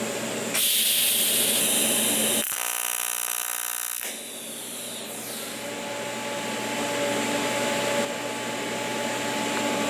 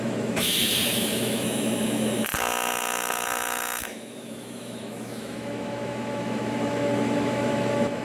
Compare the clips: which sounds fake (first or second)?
second